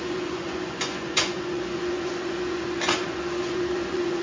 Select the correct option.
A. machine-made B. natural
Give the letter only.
A